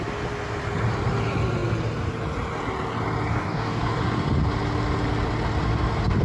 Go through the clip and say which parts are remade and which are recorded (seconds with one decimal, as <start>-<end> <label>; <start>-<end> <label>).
0.0-3.3 recorded; 3.3-4.0 remade; 4.0-6.2 recorded